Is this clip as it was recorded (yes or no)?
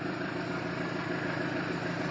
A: yes